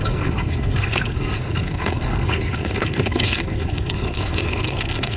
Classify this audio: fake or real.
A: fake